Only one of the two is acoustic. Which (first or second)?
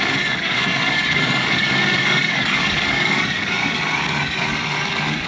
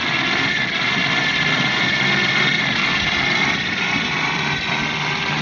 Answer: second